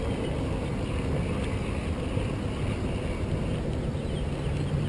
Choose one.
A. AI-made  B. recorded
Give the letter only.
B